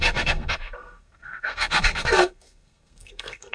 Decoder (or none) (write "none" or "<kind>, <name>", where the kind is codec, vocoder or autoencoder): codec, SNAC